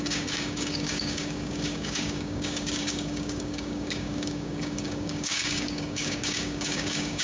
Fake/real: fake